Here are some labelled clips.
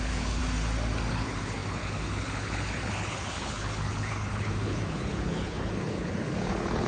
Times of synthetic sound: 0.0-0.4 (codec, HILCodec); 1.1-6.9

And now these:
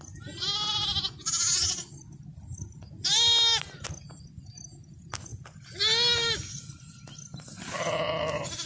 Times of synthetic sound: none

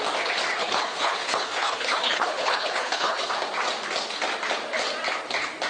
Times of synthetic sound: 0.5-3.3 (codec, HILCodec)

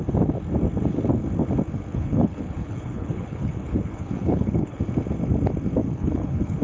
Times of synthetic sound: 1.9-4.8 (codec, HILCodec); 5.8-6.6

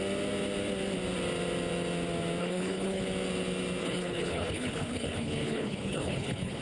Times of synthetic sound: 2.4-3.0 (codec, HILCodec); 3.8-6.6

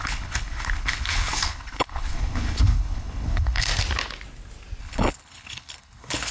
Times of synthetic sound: 0.0-3.7 (codec, HILCodec); 4.8-6.3

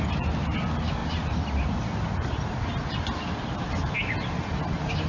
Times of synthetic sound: none